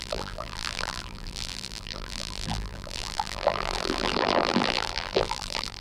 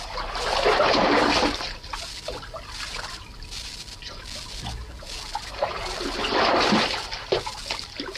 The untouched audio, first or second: second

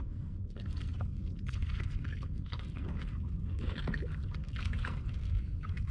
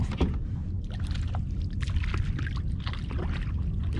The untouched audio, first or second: second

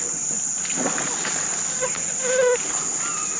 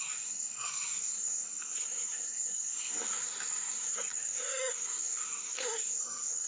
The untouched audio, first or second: first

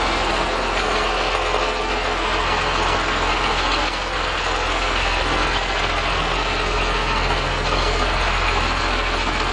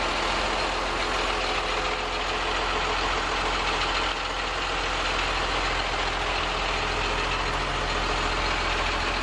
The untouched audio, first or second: second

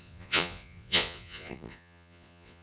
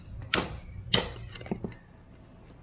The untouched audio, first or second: second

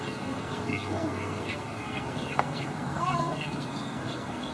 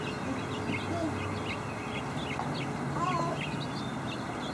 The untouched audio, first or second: second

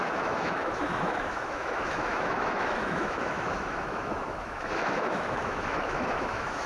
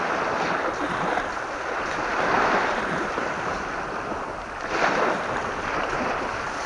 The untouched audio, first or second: second